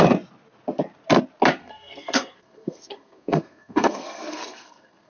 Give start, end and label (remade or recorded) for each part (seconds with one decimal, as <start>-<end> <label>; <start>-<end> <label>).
0.0-1.6 recorded; 1.6-5.1 remade

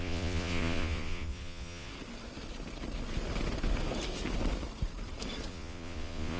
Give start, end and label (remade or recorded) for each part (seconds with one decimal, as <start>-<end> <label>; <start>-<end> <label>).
0.0-1.9 remade; 1.9-5.5 recorded; 5.5-6.4 remade